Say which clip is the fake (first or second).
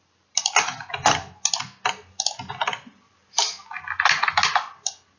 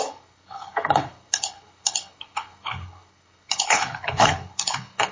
second